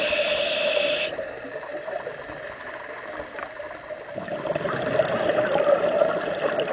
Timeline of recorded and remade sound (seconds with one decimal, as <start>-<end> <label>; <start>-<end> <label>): 0.0-6.7 recorded